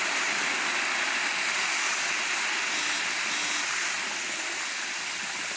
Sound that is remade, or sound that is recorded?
recorded